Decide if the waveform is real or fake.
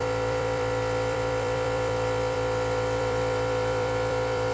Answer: fake